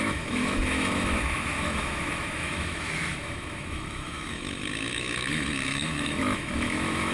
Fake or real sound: fake